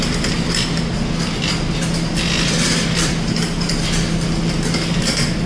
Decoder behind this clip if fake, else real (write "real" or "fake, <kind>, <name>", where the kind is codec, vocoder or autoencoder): real